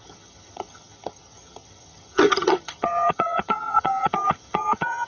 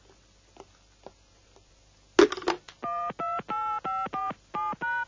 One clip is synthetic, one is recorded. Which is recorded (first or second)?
second